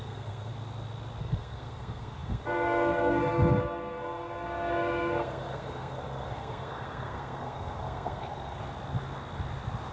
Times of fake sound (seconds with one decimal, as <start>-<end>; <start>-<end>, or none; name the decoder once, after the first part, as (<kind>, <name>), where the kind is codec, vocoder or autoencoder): 0.0-0.5 (codec, SNAC); 1.2-8.6